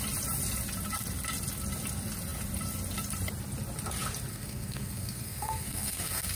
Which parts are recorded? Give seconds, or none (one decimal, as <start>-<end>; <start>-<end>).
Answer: 0.0-4.3